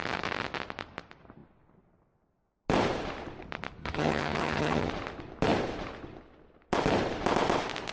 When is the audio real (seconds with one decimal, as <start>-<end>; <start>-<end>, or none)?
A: 0.0-3.8; 4.9-7.9